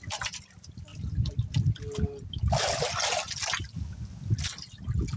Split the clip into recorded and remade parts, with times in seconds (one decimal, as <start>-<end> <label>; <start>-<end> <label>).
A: 0.0-5.2 recorded